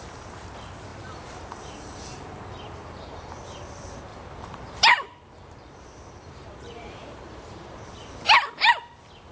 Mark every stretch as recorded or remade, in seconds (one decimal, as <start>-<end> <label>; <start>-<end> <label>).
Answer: 0.0-0.9 recorded; 0.9-3.3 remade; 3.3-4.1 recorded; 4.1-7.9 remade; 7.9-9.3 recorded